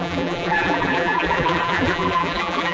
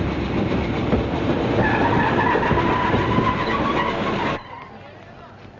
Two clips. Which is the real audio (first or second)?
second